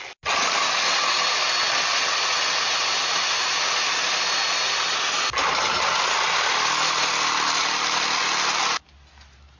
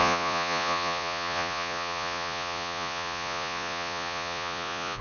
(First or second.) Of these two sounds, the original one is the first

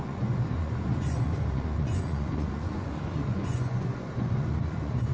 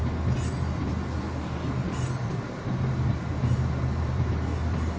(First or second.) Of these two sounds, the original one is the second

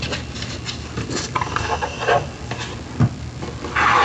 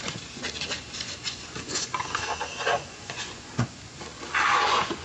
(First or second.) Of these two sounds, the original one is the first